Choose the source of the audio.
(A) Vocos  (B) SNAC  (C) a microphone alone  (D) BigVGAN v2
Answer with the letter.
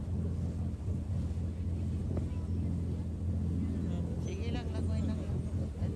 C